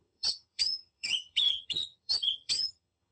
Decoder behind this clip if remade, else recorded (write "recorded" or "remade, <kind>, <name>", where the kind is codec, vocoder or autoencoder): remade, vocoder, HiFi-GAN